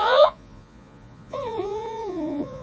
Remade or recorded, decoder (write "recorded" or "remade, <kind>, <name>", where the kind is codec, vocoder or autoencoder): remade, vocoder, Vocos